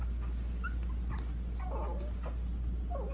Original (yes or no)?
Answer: yes